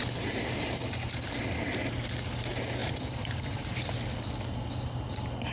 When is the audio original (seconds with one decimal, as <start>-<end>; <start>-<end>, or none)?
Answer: 1.4-2.8; 3.9-5.5